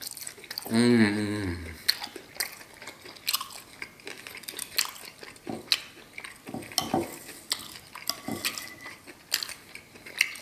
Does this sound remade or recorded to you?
recorded